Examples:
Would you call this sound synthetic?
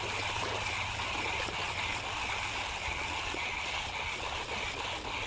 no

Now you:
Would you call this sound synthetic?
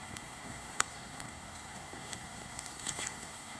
yes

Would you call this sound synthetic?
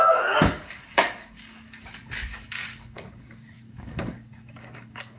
yes